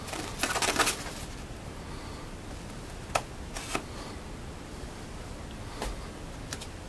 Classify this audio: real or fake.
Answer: real